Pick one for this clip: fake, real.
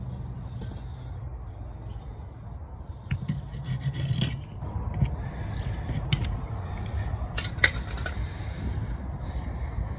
real